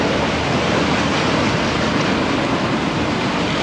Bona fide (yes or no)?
no